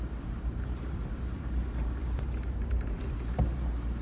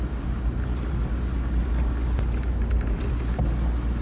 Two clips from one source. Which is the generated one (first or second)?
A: first